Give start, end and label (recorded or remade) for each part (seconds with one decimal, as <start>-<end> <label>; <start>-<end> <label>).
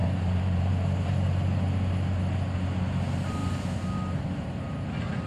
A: 0.0-1.1 remade; 1.1-5.3 recorded